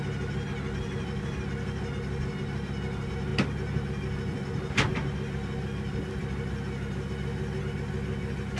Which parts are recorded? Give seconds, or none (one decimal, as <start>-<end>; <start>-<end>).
0.0-8.6